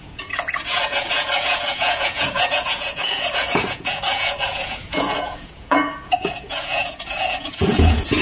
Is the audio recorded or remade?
remade